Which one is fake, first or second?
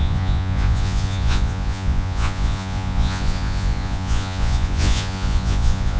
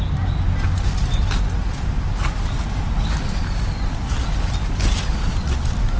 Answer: first